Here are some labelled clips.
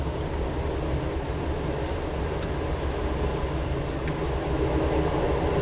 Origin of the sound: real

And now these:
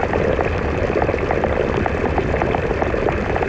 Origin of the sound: real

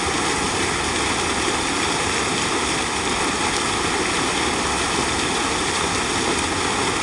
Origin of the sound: real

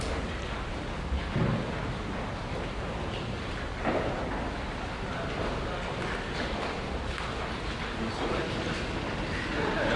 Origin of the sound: real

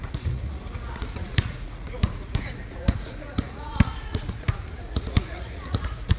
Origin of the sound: fake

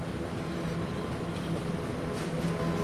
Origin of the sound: real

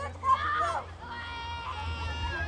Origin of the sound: real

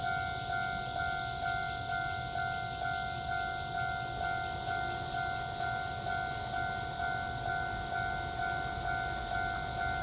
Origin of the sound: real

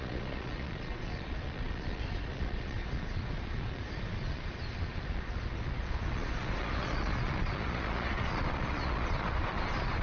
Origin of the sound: fake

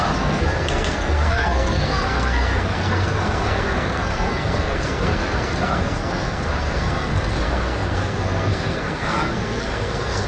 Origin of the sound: fake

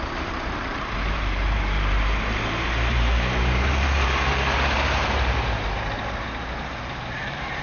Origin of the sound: fake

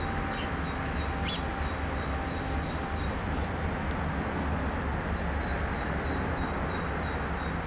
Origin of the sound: real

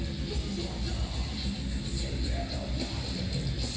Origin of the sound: real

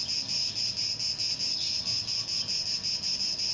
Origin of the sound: real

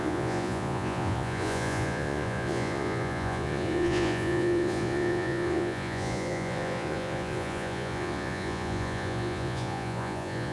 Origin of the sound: fake